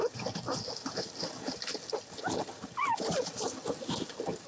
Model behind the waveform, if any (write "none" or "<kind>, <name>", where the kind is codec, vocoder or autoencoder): none